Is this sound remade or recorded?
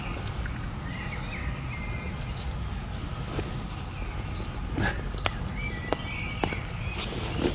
recorded